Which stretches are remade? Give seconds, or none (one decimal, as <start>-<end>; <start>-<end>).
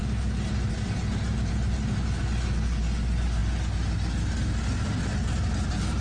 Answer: none